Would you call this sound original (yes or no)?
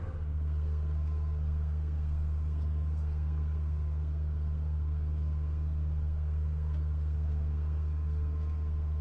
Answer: no